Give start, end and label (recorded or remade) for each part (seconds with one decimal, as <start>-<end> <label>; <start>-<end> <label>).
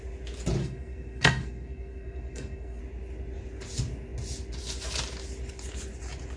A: 0.0-0.6 recorded; 0.6-2.8 remade; 2.8-6.4 recorded